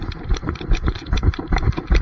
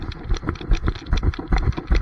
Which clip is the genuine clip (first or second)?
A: second